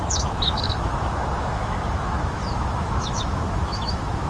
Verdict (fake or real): fake